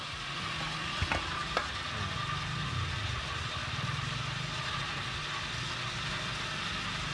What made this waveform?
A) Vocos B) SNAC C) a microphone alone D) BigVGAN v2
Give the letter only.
C